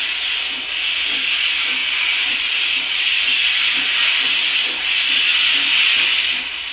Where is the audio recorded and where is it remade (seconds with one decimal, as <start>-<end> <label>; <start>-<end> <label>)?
0.0-6.7 recorded